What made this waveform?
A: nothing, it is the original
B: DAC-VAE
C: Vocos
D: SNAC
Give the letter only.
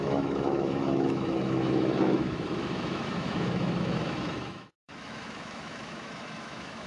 B